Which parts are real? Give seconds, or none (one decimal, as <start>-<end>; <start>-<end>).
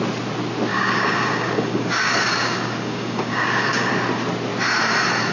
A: 0.0-0.7; 3.9-5.3